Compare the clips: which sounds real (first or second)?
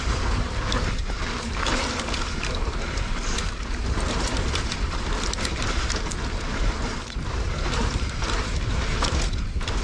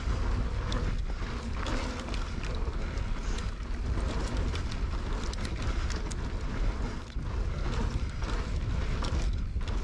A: second